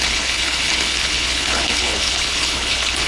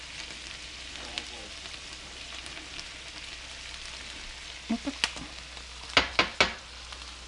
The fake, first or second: first